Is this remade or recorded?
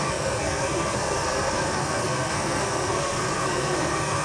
remade